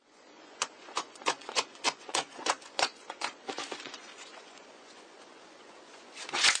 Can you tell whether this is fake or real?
fake